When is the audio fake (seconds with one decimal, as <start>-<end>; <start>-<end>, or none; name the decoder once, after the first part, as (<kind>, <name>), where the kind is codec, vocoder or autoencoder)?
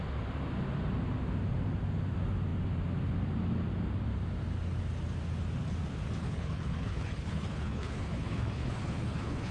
6.2-9.5 (codec, HILCodec)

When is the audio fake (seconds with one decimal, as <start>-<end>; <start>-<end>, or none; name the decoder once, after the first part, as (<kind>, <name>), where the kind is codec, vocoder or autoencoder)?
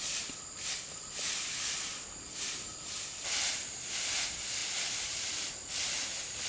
none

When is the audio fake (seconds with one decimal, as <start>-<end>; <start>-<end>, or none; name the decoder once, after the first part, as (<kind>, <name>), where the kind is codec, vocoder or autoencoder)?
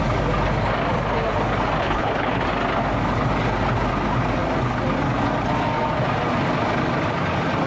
1.8-2.4 (codec, HILCodec)